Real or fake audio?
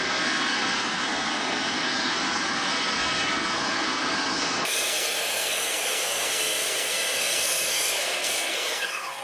fake